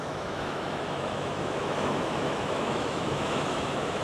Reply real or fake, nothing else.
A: fake